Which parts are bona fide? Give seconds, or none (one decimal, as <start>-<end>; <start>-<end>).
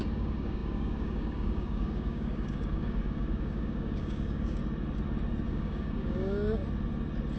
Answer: 4.6-5.5; 6.6-7.4